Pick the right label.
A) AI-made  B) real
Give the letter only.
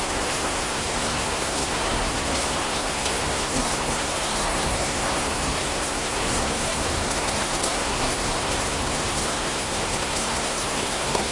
A